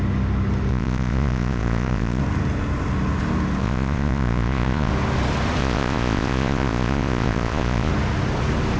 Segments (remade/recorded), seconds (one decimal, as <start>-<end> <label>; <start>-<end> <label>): 0.0-0.7 recorded; 0.7-2.2 remade; 2.2-3.6 recorded; 3.6-4.9 remade; 4.9-5.6 recorded; 5.6-7.9 remade; 7.9-8.8 recorded